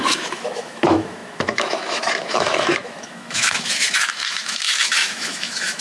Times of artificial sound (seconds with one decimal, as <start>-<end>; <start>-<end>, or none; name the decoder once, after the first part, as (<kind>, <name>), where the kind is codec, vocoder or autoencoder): 0.0-5.8 (autoencoder, DAC-VAE)